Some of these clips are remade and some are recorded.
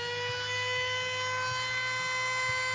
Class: recorded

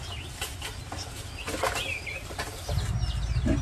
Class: recorded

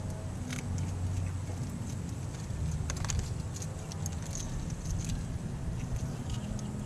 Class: recorded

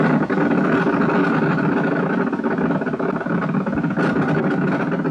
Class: recorded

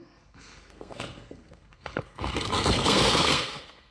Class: remade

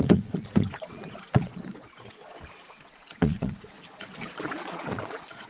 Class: remade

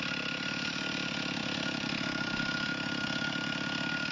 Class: recorded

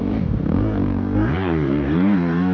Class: remade